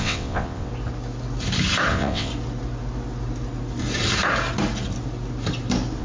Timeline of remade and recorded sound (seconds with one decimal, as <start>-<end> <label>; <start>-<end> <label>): 0.0-0.7 remade; 0.7-1.9 recorded; 1.9-2.3 remade; 2.3-6.0 recorded